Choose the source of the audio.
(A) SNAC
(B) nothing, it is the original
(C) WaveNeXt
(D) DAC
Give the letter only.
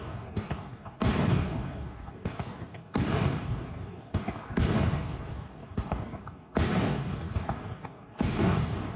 D